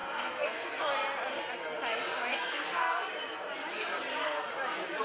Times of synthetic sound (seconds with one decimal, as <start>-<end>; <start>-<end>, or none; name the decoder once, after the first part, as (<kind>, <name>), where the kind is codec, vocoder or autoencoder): 0.0-0.8 (codec, SNAC); 2.3-3.1